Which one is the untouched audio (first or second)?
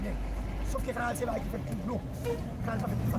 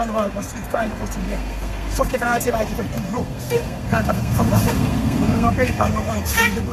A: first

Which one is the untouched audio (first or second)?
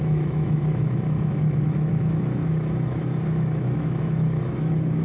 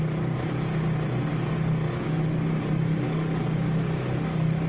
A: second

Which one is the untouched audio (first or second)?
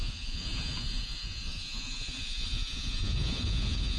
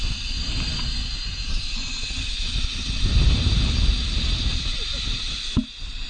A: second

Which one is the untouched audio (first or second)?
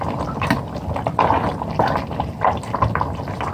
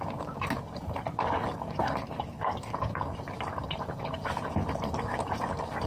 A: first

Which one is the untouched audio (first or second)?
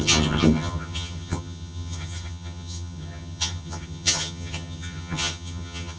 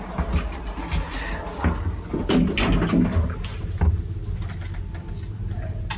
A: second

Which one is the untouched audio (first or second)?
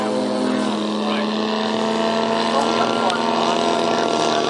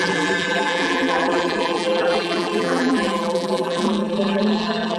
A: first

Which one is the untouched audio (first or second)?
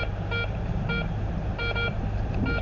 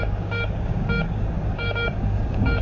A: first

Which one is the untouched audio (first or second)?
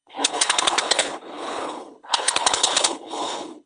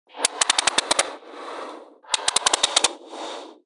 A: second